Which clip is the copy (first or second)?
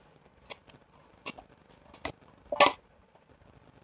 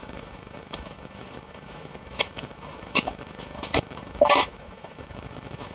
second